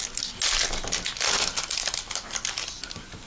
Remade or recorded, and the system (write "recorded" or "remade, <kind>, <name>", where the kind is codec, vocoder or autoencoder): recorded